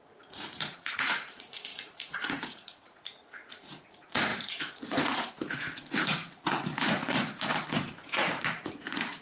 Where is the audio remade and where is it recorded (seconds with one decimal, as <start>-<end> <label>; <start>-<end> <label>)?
0.0-9.2 remade